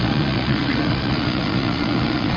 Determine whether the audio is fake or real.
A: fake